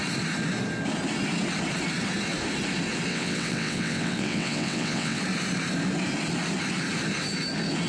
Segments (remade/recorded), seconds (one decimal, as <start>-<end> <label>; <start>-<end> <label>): 0.0-3.1 recorded; 3.1-5.2 remade; 5.2-7.9 recorded

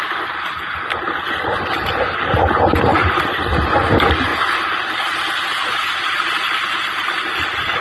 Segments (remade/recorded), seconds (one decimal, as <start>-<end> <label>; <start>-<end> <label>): 0.0-2.9 recorded; 2.9-3.5 remade; 3.5-7.8 recorded

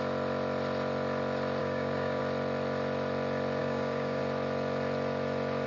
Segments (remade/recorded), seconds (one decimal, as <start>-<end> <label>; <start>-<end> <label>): 0.0-1.6 recorded; 1.6-2.2 remade; 2.2-3.6 recorded; 3.6-4.2 remade; 4.2-5.7 recorded

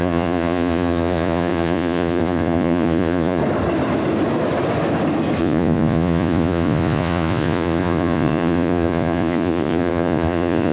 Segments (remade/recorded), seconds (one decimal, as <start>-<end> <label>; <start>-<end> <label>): 0.0-3.4 remade; 3.4-5.4 recorded; 5.4-10.7 remade

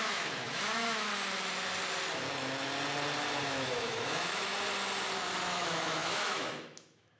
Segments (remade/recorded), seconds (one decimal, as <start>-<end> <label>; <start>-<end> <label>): 0.0-1.1 remade; 1.1-3.4 recorded; 3.4-4.5 remade; 4.5-5.4 recorded; 5.4-7.2 remade

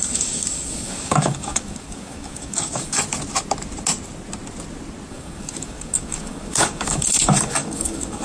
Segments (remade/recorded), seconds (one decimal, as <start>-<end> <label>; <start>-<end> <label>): 0.0-3.0 remade; 3.0-5.1 recorded; 5.1-8.2 remade

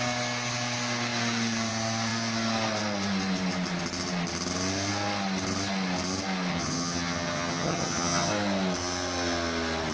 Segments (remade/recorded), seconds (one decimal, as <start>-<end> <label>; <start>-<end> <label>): 0.0-6.5 recorded; 6.5-8.3 remade; 8.3-9.9 recorded